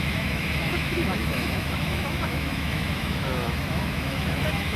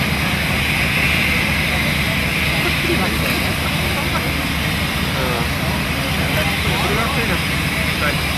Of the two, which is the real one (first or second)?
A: second